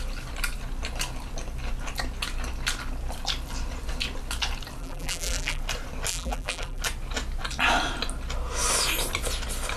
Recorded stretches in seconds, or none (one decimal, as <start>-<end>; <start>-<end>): 0.0-4.8; 5.6-6.1; 6.8-9.8